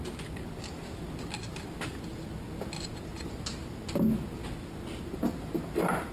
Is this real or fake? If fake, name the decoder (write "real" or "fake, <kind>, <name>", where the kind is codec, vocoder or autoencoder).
real